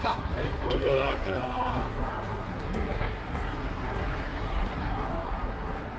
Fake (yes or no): yes